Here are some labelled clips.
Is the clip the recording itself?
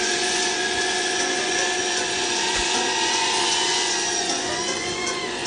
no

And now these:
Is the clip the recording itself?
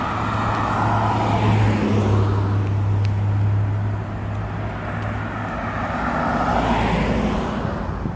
yes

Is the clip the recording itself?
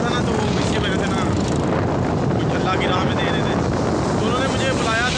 yes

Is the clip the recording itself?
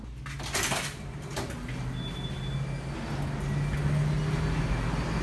yes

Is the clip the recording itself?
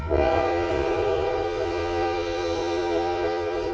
no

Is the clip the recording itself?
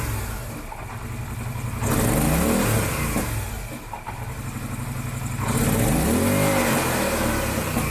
yes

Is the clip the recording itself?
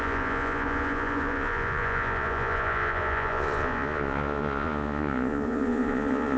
no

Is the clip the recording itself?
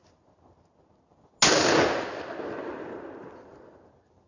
yes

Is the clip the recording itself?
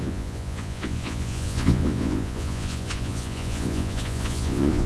no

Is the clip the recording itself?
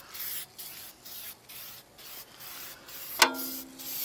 yes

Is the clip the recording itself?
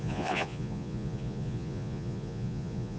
no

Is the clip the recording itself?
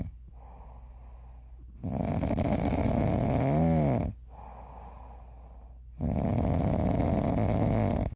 yes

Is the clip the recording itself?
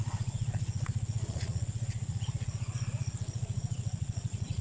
no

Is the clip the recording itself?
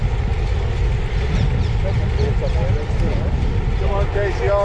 yes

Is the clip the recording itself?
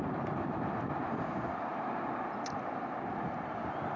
yes